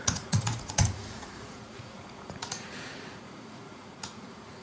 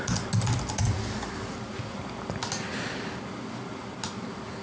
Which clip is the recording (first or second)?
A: second